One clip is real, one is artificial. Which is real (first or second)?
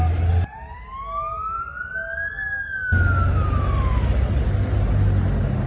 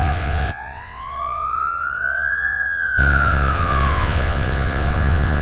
first